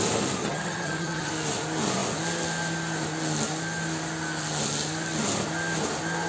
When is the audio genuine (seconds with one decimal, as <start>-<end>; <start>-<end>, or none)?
0.0-0.4; 1.3-6.3